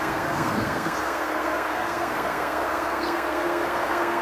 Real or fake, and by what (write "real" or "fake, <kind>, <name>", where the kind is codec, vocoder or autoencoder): fake, codec, SNAC